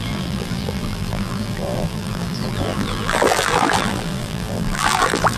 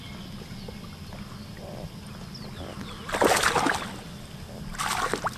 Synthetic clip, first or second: first